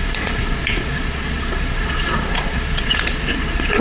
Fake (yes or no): yes